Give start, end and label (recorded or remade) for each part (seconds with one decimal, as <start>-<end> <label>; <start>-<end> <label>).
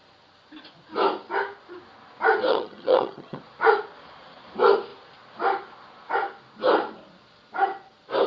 0.0-2.5 recorded; 2.5-3.4 remade; 3.4-8.3 recorded